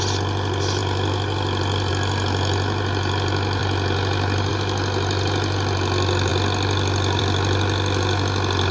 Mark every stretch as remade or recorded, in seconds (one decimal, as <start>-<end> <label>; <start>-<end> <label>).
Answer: 0.0-8.7 recorded

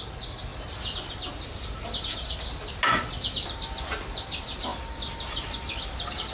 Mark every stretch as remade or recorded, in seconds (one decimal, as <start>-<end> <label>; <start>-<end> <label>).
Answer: 0.0-6.3 recorded

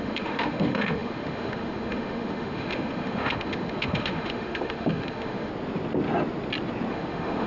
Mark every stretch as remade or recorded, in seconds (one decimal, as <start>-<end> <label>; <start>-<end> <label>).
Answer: 0.0-5.5 remade; 5.5-6.9 recorded; 6.9-7.5 remade

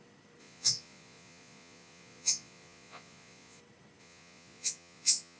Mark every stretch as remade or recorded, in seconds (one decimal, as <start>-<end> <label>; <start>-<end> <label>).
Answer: 0.0-0.4 recorded; 0.4-3.6 remade; 3.6-4.0 recorded; 4.0-5.4 remade

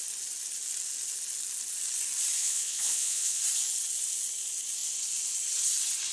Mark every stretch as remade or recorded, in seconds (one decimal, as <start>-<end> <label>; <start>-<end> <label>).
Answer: 0.0-2.4 recorded; 2.4-3.4 remade; 3.4-6.1 recorded

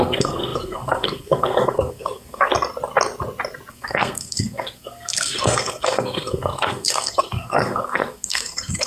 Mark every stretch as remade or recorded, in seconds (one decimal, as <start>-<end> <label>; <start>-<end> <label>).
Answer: 0.0-2.5 remade; 2.5-3.7 recorded; 3.7-8.9 remade

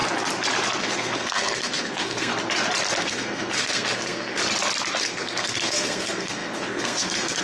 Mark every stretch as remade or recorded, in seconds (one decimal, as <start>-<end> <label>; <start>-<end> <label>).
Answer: 0.0-0.8 recorded; 0.8-2.3 remade; 2.3-3.0 recorded; 3.0-4.4 remade; 4.4-5.0 recorded; 5.0-7.4 remade

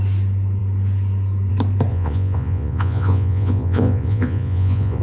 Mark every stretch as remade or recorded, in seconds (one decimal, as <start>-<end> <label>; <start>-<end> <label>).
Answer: 0.0-1.9 recorded; 1.9-5.0 remade